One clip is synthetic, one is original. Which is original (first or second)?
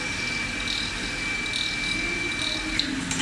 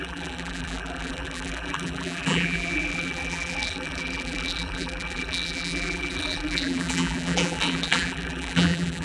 first